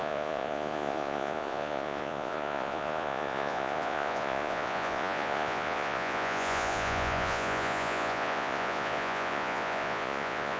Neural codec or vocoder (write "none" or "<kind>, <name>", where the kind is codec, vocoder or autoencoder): vocoder, Vocos